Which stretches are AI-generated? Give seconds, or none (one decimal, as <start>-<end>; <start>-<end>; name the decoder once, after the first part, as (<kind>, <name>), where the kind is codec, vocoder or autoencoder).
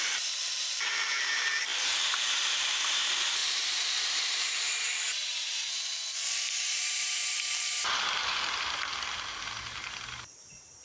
0.0-8.9 (vocoder, BigVGAN v2); 10.1-10.8